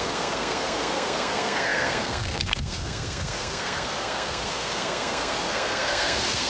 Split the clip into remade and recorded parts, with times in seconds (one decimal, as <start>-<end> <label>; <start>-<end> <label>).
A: 0.0-6.5 remade